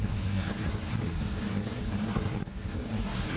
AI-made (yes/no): yes